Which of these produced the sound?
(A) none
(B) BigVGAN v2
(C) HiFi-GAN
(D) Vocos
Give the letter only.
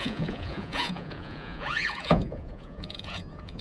D